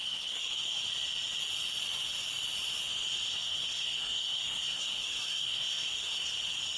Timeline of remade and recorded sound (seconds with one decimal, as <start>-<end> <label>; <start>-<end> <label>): 0.0-0.8 remade; 0.8-3.3 recorded; 3.3-6.3 remade; 6.3-6.8 recorded